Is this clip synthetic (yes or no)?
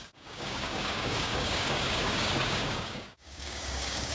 yes